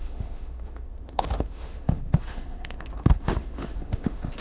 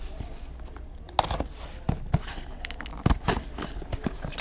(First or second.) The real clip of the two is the second